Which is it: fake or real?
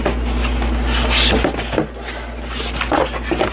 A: real